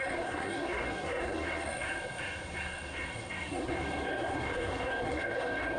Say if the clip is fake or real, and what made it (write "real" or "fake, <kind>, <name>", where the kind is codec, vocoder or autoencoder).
fake, codec, SNAC